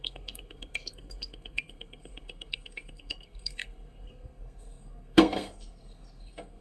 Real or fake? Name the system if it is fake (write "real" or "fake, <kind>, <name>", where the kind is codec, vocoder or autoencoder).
fake, codec, SNAC